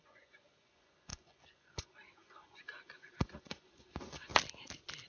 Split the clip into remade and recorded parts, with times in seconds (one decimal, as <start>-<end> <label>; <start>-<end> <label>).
0.0-4.3 remade; 4.3-5.1 recorded